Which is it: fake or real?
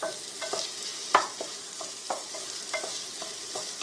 real